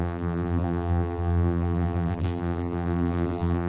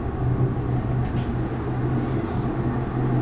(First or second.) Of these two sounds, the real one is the second